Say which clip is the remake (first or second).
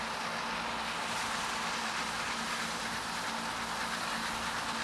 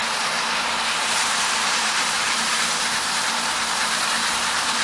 second